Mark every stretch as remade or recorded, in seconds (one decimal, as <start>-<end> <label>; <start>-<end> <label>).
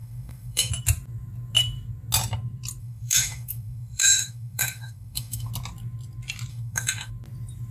0.0-0.7 remade; 0.7-2.8 recorded; 2.8-5.5 remade; 5.5-6.5 recorded; 6.5-7.1 remade; 7.1-7.7 recorded